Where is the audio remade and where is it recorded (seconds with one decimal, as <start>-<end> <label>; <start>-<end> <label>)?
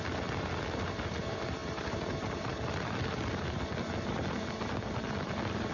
0.0-5.7 recorded